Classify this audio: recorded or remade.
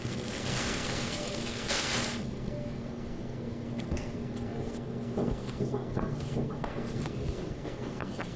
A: remade